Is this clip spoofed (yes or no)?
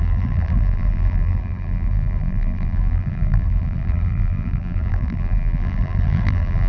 yes